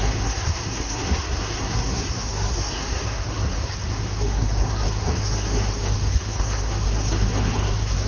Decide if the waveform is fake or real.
fake